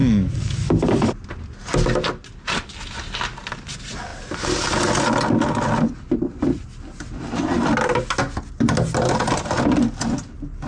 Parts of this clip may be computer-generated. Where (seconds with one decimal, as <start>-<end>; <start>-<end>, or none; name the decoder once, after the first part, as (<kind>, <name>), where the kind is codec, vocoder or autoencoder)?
0.0-1.1 (codec, DAC)